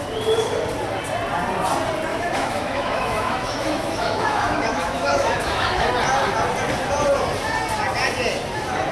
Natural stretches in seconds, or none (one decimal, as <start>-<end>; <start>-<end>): 0.0-2.1; 5.9-8.9